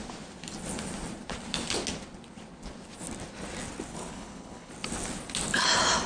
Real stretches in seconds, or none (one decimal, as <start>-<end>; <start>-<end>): 0.0-3.9; 4.7-6.1